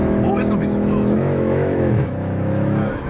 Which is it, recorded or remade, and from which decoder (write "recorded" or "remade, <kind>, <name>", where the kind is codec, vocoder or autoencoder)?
remade, autoencoder, DAC-VAE